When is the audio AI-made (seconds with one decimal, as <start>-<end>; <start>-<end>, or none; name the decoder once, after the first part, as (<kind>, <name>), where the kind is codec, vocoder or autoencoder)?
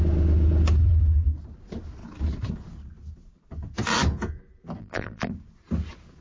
4.8-5.3 (vocoder, BigVGAN v2)